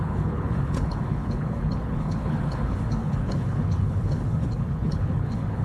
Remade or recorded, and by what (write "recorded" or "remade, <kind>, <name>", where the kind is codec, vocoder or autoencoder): remade, codec, HILCodec